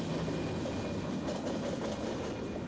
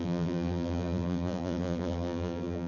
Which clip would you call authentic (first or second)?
first